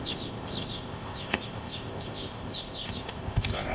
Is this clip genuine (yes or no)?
no